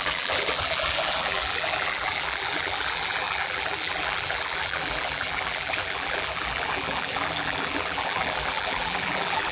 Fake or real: fake